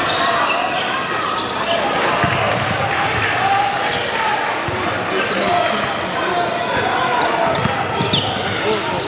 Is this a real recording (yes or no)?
yes